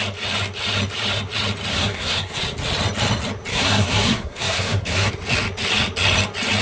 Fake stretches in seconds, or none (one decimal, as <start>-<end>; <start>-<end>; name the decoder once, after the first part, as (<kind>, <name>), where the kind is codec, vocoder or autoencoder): 1.7-2.4 (codec, SNAC); 3.5-5.1